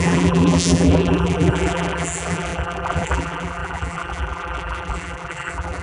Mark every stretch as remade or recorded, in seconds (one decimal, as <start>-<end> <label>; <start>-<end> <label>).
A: 0.0-5.8 remade